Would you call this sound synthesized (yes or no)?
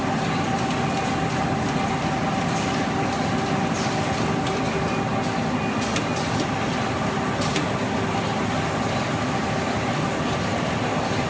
no